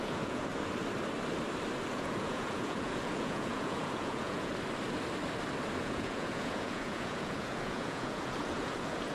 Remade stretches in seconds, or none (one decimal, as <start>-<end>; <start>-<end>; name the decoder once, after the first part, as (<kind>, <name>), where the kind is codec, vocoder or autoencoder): 0.0-0.5 (vocoder, Vocos); 1.9-4.5; 5.8-9.1